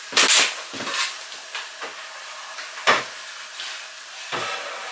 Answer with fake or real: real